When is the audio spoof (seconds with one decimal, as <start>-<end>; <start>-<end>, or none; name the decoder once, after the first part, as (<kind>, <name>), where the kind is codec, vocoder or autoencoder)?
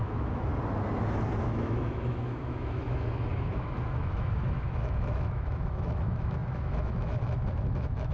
0.0-0.5 (autoencoder, DAC-VAE); 1.4-8.1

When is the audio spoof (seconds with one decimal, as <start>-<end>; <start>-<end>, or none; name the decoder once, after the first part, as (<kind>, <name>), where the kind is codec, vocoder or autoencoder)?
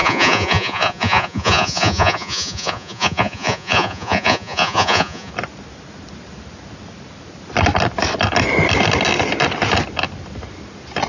0.0-5.3 (vocoder, Vocos)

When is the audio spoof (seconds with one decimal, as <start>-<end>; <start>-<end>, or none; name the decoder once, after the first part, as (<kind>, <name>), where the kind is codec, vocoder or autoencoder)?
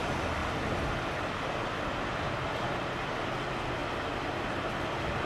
0.0-0.4 (vocoder, BigVGAN v2); 2.5-3.8; 4.4-5.3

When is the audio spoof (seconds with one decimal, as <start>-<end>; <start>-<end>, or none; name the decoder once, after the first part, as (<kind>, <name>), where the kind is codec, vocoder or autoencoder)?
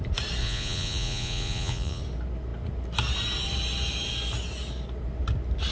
0.4-2.0 (vocoder, Vocos)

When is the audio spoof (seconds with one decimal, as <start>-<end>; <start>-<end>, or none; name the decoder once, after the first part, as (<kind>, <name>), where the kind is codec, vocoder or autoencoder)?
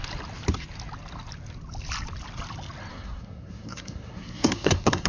2.9-5.1 (codec, SNAC)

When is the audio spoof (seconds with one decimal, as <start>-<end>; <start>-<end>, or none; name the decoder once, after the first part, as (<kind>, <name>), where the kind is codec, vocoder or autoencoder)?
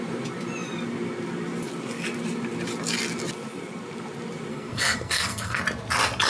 4.5-5.6 (codec, SNAC)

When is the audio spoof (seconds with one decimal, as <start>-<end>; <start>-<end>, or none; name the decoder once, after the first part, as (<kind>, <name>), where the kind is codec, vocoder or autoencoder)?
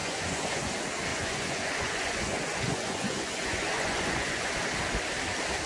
0.0-0.7 (vocoder, Vocos); 1.1-4.5